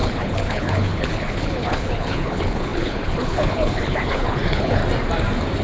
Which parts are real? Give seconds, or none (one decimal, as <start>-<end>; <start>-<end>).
4.8-5.6